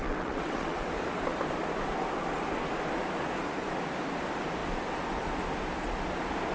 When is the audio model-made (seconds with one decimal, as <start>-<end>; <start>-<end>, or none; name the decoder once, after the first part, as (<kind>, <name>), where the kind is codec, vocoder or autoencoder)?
0.0-0.9 (vocoder, WaveNeXt)